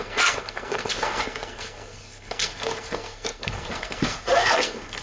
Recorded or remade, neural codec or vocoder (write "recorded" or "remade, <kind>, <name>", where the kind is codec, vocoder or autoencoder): remade, codec, SNAC